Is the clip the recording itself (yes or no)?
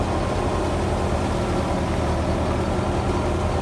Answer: yes